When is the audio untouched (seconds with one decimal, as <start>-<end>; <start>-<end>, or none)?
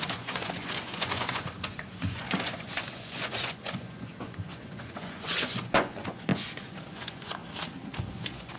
7.4-8.1